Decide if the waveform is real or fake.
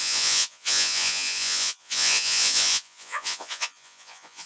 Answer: fake